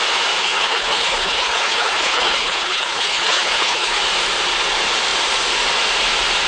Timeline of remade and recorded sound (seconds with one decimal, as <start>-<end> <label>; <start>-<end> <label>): 0.0-0.4 recorded; 0.4-4.0 remade; 4.0-6.5 recorded